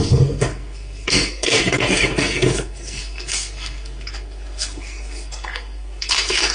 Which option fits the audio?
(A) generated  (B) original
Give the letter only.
A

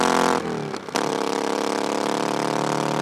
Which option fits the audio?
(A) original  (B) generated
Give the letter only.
A